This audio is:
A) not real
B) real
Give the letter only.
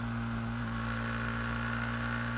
B